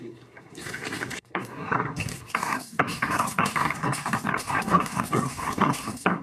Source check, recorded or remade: remade